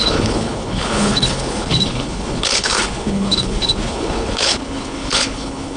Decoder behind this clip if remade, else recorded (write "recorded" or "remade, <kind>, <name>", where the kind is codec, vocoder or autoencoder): remade, codec, HILCodec